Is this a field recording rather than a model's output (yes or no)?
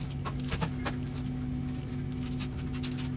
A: yes